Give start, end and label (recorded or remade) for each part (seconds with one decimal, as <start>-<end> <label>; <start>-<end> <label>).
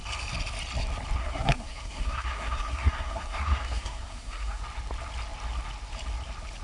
0.0-1.2 recorded; 1.2-4.6 remade; 4.6-6.6 recorded